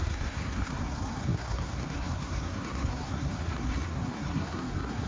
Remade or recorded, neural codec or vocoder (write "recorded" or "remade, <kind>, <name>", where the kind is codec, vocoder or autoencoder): remade, codec, SNAC